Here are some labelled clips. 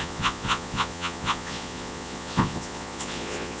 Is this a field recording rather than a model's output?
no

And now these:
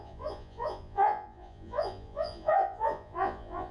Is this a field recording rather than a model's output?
no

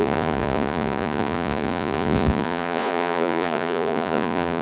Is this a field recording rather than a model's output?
no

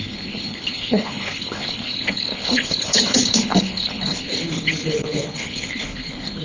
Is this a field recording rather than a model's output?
no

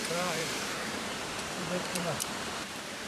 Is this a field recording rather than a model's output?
no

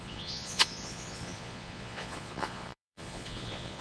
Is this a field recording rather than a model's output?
no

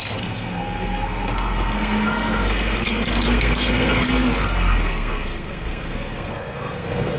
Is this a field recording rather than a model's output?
no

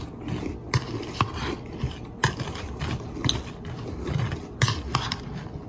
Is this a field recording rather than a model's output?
yes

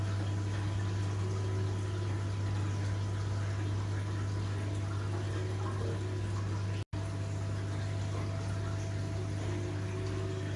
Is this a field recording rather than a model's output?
yes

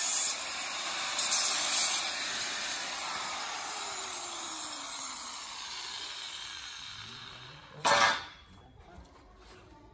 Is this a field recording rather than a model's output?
no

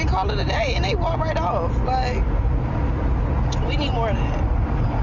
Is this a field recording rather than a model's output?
yes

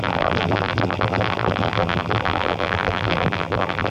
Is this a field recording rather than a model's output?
no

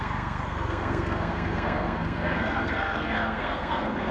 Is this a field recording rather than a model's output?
no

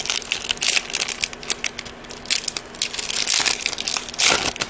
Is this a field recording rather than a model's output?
yes